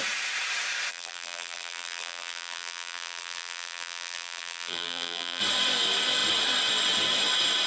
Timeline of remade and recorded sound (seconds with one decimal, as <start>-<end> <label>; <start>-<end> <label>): 0.0-0.9 recorded; 0.9-5.4 remade; 5.4-7.7 recorded